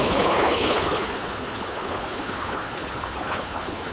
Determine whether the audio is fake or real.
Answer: fake